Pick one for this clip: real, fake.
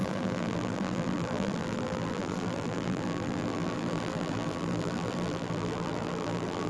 fake